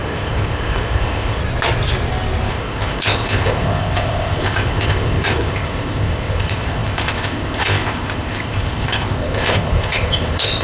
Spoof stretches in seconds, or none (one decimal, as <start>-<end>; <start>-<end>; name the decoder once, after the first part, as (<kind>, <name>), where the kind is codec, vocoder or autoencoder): 0.0-1.4 (codec, ZipCodec); 2.5-10.6